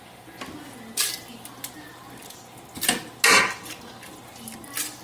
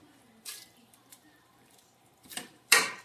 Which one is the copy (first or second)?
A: second